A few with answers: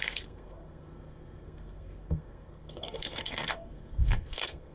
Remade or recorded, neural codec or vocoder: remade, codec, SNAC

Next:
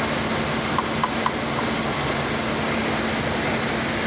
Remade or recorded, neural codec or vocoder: recorded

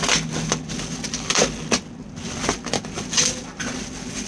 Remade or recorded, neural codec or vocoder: recorded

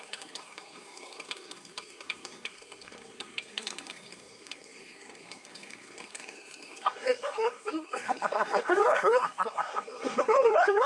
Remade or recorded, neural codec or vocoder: remade, codec, SNAC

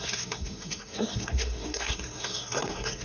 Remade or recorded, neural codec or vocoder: remade, codec, SNAC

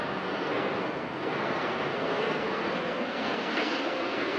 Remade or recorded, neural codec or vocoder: remade, codec, SNAC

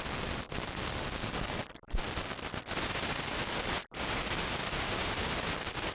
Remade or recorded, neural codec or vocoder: recorded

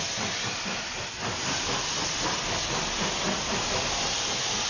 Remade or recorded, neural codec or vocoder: recorded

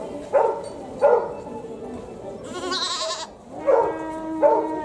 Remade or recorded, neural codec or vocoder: recorded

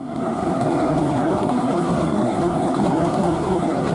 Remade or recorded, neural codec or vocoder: remade, codec, SNAC